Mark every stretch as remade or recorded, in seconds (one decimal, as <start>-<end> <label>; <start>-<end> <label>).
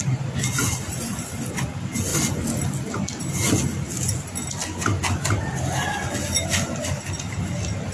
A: 0.0-7.9 recorded